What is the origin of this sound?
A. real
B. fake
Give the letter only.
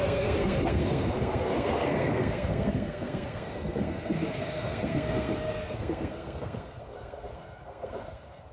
B